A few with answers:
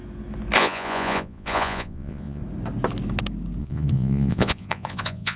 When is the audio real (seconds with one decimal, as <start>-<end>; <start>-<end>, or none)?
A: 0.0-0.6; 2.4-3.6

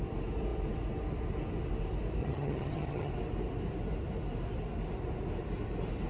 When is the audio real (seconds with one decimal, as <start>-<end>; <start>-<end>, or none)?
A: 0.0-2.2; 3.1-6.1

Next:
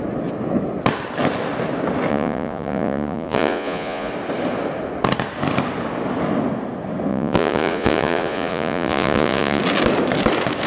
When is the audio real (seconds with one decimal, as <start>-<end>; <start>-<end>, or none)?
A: 0.0-2.1; 4.1-7.1; 9.6-10.7

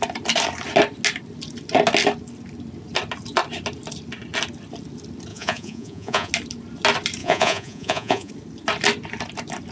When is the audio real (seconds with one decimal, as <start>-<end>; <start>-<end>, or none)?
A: 0.0-5.3; 6.3-7.2; 8.3-9.7

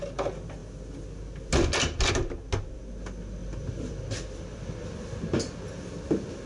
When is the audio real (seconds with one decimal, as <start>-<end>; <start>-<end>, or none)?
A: 0.0-3.4; 5.0-6.5